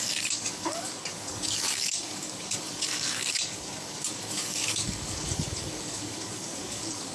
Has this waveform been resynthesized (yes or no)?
yes